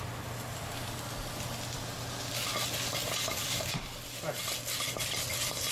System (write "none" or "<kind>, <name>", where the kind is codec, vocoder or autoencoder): none